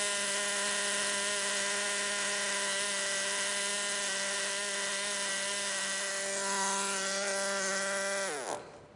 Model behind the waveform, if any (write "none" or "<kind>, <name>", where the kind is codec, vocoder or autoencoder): none